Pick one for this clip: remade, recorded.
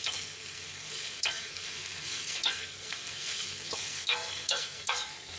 remade